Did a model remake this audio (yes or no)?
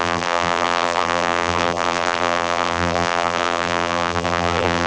yes